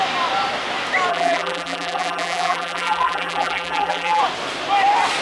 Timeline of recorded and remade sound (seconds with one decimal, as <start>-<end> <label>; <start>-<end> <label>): 0.0-1.1 recorded; 1.1-4.2 remade; 4.2-5.2 recorded